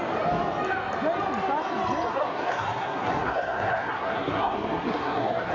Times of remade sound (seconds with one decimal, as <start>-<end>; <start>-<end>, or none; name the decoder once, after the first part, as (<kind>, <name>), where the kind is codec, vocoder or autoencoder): 2.1-5.5 (codec, SNAC)